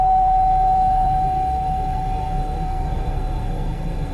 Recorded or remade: remade